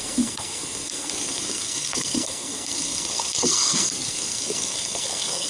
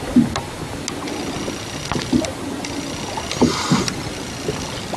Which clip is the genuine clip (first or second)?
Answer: second